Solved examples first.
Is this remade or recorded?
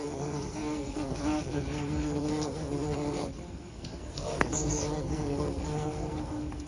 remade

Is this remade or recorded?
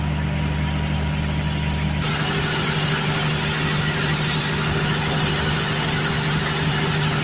recorded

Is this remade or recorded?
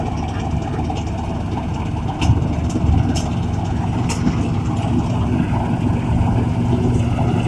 recorded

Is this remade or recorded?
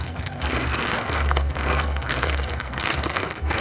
remade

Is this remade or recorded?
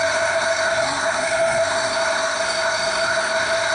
remade